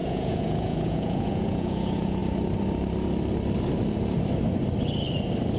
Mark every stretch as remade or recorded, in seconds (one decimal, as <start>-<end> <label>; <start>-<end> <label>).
0.0-2.2 remade; 2.2-5.6 recorded

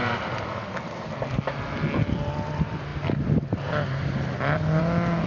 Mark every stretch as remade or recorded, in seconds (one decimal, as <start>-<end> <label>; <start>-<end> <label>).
0.0-5.3 recorded